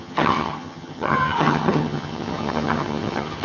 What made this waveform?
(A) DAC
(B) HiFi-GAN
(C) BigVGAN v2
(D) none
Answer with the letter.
B